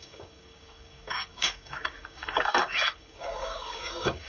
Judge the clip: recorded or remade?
remade